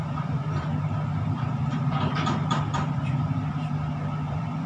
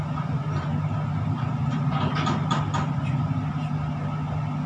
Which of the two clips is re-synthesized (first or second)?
first